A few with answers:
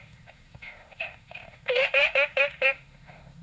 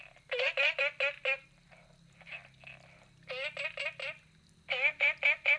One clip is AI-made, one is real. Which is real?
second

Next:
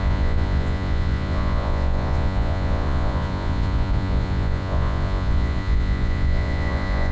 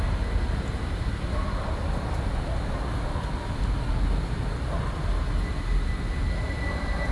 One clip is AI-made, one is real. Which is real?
second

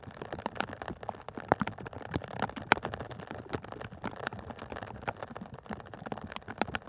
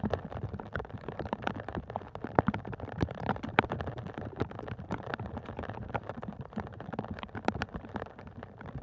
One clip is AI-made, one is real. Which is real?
first